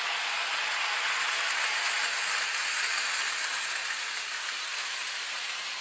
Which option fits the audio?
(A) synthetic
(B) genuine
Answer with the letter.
B